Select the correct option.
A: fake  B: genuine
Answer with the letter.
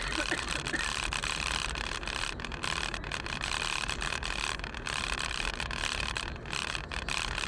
A